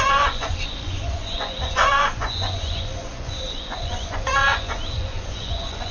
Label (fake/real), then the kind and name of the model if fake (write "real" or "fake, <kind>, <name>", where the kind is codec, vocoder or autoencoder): fake, vocoder, Vocos